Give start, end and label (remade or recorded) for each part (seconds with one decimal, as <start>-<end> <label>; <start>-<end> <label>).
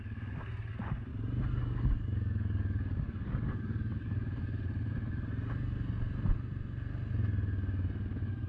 0.0-1.1 remade; 1.1-1.6 recorded; 1.6-4.4 remade; 4.4-8.0 recorded; 8.0-8.5 remade